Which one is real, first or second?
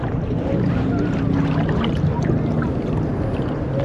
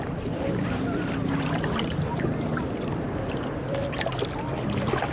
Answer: first